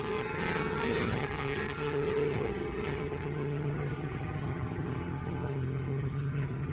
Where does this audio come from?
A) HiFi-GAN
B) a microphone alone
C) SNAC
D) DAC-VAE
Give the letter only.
A